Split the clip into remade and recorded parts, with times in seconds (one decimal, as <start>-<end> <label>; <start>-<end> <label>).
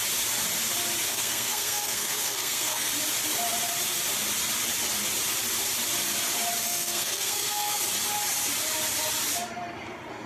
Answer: 0.0-1.1 recorded; 1.1-2.9 remade; 2.9-6.6 recorded; 6.6-7.8 remade; 7.8-10.3 recorded